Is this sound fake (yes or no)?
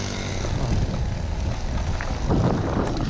no